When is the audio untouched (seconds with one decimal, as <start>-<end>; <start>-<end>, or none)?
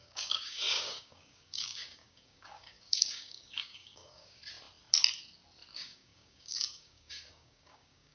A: 4.4-5.7